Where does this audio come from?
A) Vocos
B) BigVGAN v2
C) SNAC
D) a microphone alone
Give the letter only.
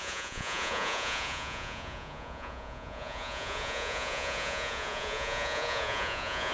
A